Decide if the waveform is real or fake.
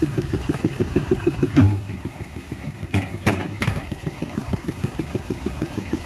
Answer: fake